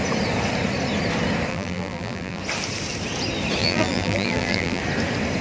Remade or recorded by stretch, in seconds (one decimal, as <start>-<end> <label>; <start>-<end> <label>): 0.0-1.5 recorded; 1.5-2.4 remade; 2.4-3.6 recorded; 3.6-4.8 remade; 4.8-5.4 recorded